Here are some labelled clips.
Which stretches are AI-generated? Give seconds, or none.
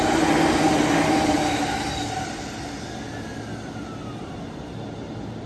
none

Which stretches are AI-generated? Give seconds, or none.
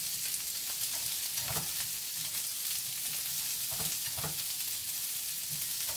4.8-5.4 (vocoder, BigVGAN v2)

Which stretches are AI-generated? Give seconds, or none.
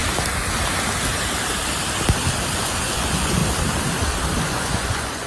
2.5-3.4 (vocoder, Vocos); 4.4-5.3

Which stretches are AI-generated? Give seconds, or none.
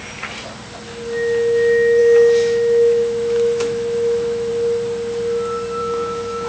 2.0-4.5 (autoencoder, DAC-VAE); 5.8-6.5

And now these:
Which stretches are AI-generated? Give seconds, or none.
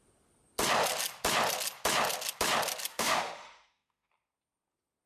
2.9-4.1 (autoencoder, DAC-VAE)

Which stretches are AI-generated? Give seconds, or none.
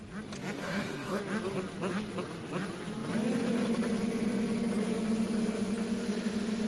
0.6-1.2 (codec, SNAC)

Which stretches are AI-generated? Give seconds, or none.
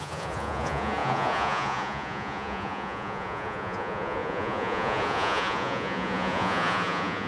0.0-7.3 (vocoder, Vocos)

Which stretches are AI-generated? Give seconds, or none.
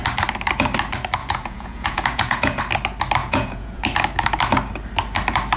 1.2-2.6 (vocoder, Vocos); 3.2-3.8